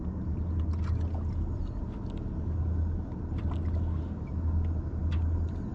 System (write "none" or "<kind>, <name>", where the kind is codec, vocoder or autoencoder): none